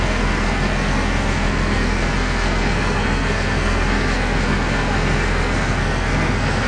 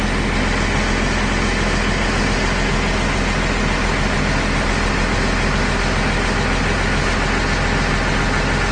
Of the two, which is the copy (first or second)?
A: first